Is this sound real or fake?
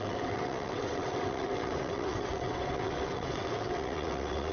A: fake